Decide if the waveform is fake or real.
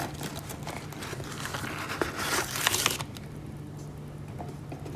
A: real